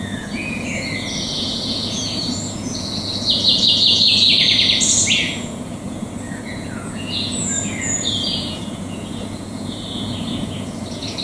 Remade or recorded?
remade